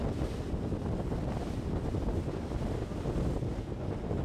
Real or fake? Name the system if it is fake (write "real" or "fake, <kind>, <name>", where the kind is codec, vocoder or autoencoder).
real